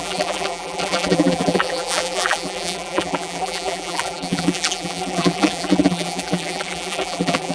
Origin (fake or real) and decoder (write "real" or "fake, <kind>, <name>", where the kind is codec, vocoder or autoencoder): fake, vocoder, BigVGAN v2